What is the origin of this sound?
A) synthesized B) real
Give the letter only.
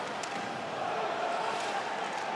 B